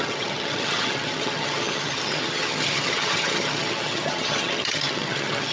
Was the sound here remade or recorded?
remade